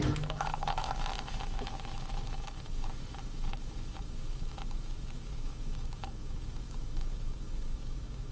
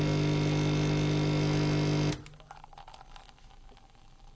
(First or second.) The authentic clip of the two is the second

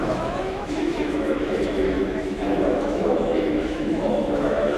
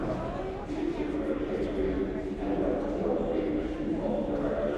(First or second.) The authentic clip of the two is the second